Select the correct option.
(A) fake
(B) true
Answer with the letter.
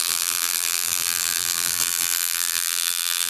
A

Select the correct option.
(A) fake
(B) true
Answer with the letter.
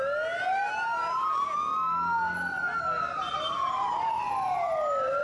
B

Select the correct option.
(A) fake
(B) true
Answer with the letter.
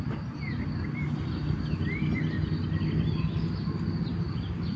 B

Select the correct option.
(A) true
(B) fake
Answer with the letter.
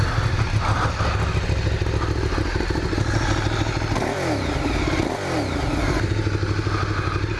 A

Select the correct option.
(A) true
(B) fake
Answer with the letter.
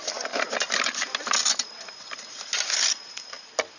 A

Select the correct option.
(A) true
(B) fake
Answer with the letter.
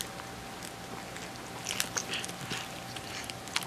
A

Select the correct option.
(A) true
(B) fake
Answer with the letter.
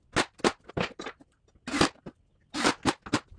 A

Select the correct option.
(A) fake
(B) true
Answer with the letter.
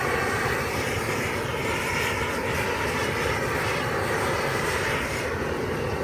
A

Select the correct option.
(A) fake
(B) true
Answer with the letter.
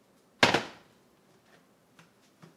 B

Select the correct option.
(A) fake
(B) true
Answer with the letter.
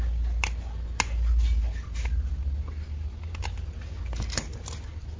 B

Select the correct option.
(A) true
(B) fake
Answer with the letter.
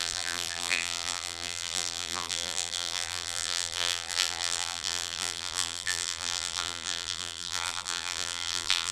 B